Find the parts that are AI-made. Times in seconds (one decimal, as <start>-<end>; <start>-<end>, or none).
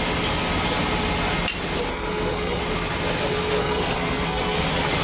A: 1.9-2.6; 3.6-4.6